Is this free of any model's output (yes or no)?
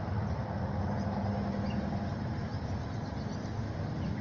yes